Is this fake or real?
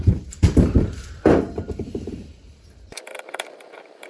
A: fake